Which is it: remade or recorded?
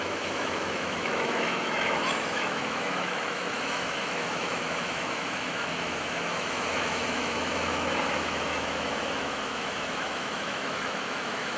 remade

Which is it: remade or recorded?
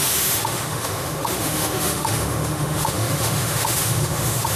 remade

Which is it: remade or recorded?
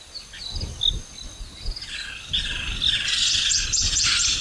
recorded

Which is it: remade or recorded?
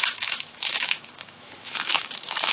remade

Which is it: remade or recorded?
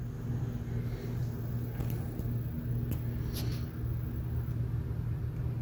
recorded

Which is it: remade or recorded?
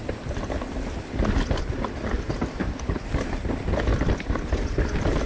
recorded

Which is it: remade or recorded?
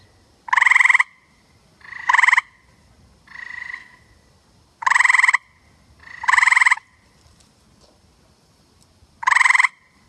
recorded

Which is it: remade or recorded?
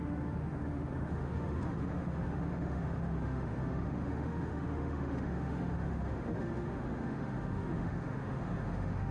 remade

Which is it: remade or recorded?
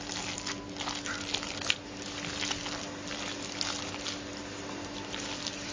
recorded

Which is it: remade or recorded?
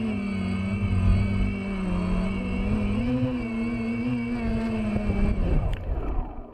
recorded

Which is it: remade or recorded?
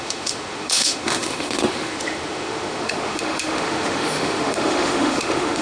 remade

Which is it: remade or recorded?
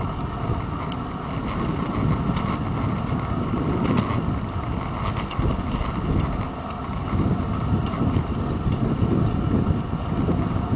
recorded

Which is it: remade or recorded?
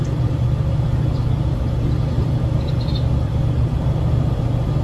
recorded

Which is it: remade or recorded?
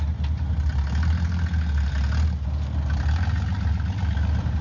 recorded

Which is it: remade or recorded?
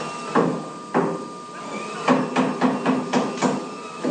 recorded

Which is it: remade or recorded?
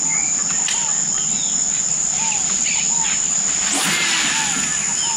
recorded